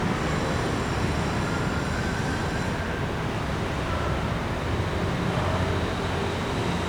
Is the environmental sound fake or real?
real